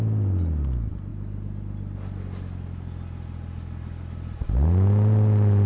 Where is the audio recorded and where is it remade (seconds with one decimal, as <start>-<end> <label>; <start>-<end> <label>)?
0.0-5.7 recorded